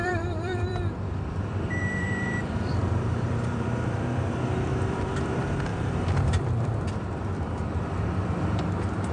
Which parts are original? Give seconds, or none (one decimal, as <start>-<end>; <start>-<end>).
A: none